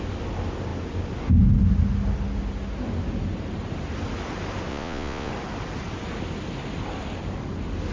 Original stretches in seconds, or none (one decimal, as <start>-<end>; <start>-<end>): 0.0-4.7; 5.3-7.9